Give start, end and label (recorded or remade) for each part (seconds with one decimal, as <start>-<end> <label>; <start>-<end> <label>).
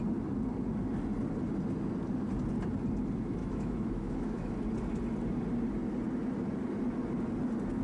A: 0.0-3.4 recorded; 3.4-4.5 remade; 4.5-7.8 recorded